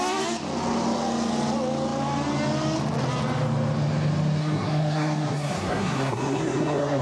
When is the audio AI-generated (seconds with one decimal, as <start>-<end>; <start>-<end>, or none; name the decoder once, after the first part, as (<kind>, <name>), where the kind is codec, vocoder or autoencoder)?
4.4-7.0 (codec, SNAC)